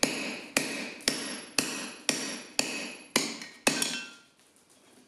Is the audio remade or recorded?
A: recorded